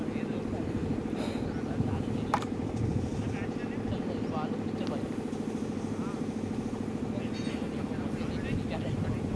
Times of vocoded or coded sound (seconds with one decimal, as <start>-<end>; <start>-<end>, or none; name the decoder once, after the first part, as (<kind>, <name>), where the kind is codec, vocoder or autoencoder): none